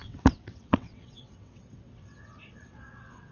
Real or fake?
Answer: fake